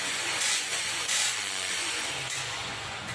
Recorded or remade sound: remade